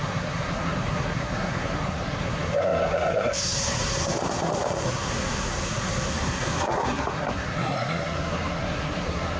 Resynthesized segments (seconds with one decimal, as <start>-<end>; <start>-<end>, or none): 0.0-9.4